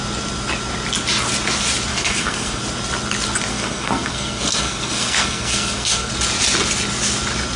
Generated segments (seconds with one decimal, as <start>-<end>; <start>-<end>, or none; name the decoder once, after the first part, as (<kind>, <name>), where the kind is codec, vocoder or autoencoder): 1.9-2.6 (codec, SNAC); 3.5-6.1